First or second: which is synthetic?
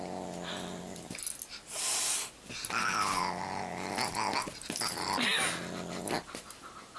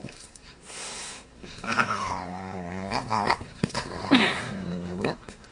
second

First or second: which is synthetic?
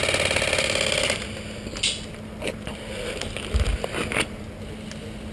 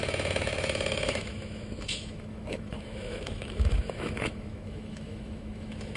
second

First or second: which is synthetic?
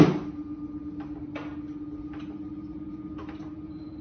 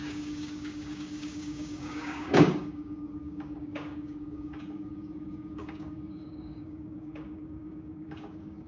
second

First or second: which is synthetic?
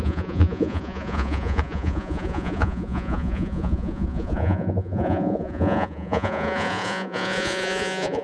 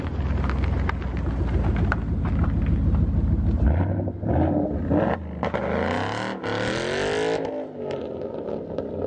first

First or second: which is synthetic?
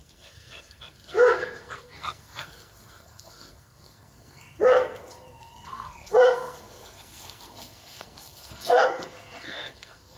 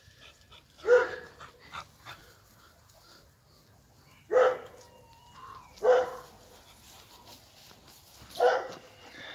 first